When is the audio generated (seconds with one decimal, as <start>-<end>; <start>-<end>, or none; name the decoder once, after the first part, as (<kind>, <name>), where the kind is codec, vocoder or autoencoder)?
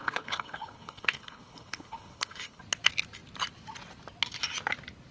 0.0-2.6 (codec, HILCodec)